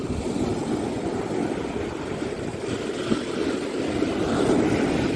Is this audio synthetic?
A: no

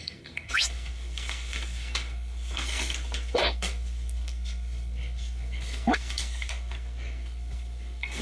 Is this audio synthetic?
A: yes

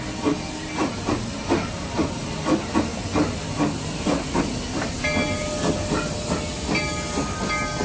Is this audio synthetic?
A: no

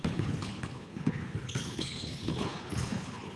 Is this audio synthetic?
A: yes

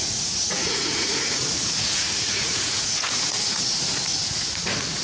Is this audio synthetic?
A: yes